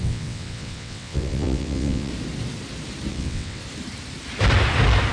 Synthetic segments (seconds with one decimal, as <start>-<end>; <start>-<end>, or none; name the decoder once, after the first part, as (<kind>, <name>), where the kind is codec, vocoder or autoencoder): 0.0-2.1 (vocoder, WaveNeXt); 3.1-3.6